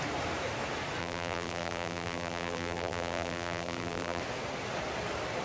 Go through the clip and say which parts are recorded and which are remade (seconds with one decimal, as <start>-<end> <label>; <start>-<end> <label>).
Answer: 0.0-1.0 recorded; 1.0-4.2 remade; 4.2-5.4 recorded